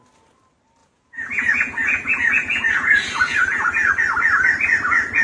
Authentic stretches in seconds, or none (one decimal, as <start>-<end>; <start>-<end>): 0.0-0.8; 3.9-5.2